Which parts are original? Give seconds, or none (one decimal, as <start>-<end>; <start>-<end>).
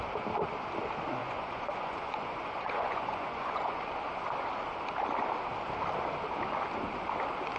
0.0-1.2; 3.8-7.6